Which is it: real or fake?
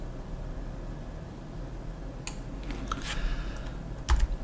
real